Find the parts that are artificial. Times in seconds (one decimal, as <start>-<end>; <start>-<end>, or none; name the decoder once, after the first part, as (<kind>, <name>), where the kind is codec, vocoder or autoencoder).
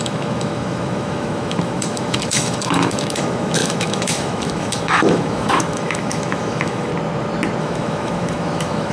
0.0-6.9 (autoencoder, DAC-VAE); 7.6-8.9